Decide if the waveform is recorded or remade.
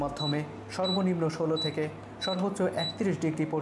recorded